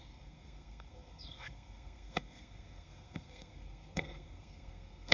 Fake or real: fake